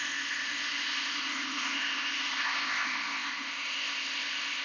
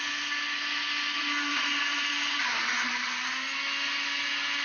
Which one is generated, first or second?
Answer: first